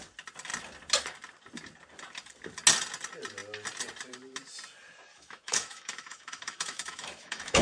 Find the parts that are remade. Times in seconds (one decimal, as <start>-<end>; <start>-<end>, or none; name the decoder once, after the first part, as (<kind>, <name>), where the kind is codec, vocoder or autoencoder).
5.1-7.6 (autoencoder, DAC-VAE)